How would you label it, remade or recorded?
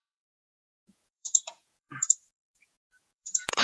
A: remade